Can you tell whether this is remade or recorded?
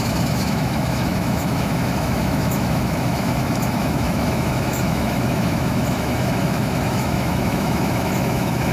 remade